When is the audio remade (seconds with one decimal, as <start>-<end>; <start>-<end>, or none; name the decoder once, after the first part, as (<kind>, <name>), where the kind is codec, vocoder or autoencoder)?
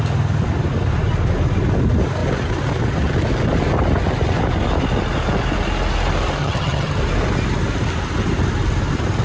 6.4-7.0 (vocoder, HiFi-GAN)